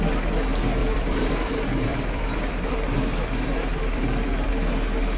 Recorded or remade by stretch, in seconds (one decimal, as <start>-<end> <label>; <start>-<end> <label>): 0.0-0.8 recorded; 0.8-1.5 remade; 1.5-1.9 recorded; 1.9-4.5 remade; 4.5-5.2 recorded